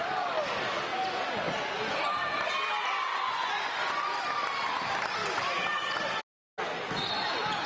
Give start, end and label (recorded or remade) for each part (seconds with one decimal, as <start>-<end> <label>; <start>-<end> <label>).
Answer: 0.0-3.1 recorded; 3.1-4.2 remade; 4.2-7.7 recorded